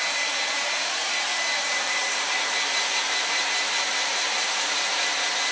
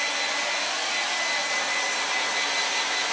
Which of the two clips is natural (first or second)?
second